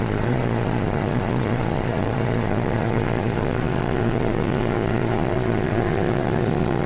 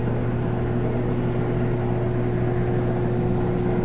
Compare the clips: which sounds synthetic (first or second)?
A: first